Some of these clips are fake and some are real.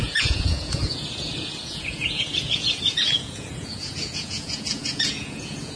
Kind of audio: fake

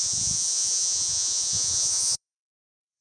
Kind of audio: fake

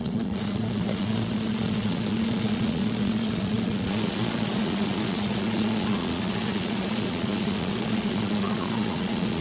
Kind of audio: fake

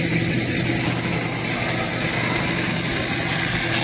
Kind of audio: real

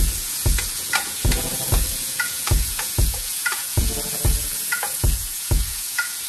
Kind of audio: fake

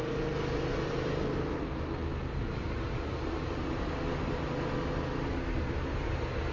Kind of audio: real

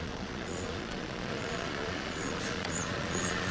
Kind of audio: fake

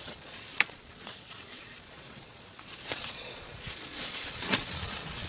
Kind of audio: fake